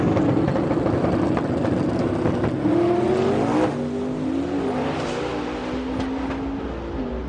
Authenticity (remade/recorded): recorded